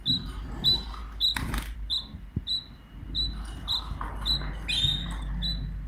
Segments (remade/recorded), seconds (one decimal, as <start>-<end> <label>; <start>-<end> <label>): 0.0-1.0 recorded; 1.0-4.5 remade; 4.5-5.9 recorded